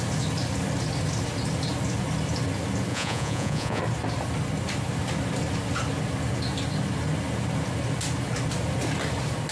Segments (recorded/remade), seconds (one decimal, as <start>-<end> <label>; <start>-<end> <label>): 0.0-2.9 recorded; 2.9-3.8 remade; 3.8-9.5 recorded